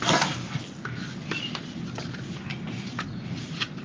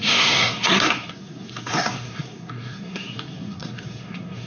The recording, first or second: first